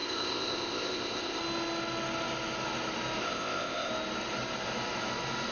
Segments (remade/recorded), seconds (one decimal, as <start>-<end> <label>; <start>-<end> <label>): 0.0-1.4 remade; 1.4-3.2 recorded; 3.2-3.9 remade; 3.9-5.5 recorded